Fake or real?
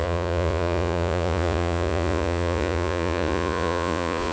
fake